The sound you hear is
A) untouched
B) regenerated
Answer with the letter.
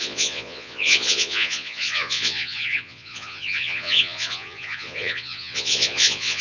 B